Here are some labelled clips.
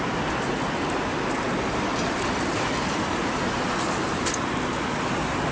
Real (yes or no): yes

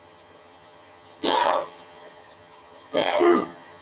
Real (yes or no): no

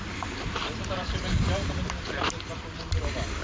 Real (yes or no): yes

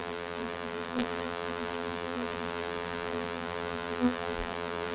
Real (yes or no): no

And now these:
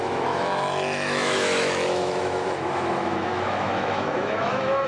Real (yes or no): no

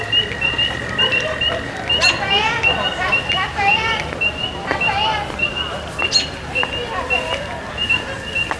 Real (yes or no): yes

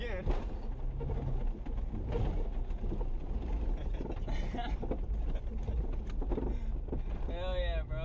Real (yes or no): yes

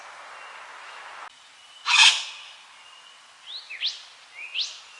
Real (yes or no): yes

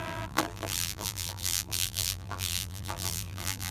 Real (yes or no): no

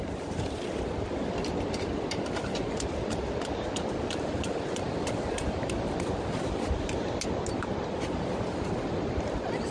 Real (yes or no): yes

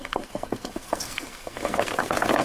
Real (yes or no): no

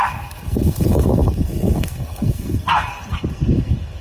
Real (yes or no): no